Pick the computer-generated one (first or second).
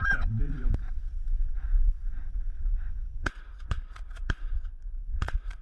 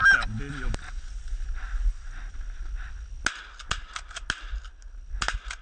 first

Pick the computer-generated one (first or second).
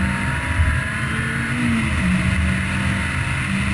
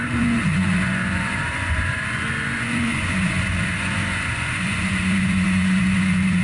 second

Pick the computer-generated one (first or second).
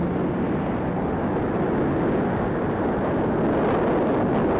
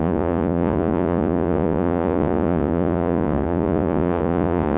second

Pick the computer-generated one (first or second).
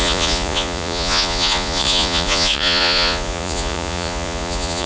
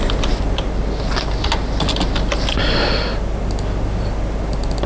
first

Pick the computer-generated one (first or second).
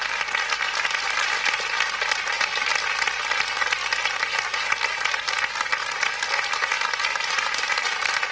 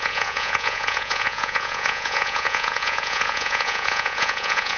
second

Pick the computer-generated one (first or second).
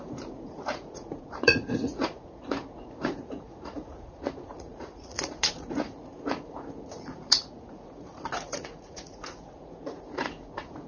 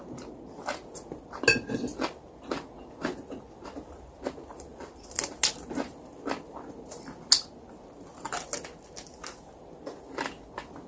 first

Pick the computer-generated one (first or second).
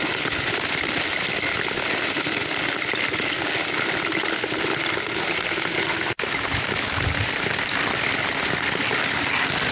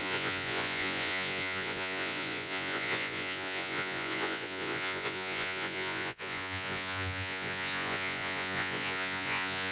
second